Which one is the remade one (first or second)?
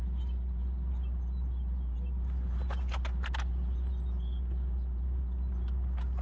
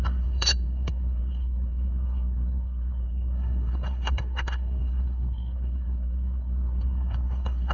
second